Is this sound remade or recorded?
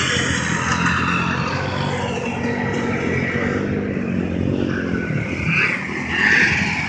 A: recorded